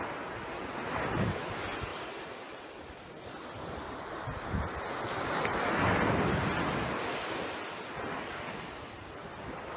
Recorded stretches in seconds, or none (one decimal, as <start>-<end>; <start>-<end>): 0.0-9.8